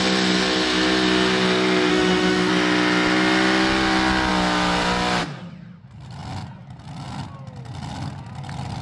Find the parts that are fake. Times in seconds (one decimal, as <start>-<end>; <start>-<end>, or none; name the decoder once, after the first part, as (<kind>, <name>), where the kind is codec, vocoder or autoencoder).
1.9-2.5 (autoencoder, DAC-VAE)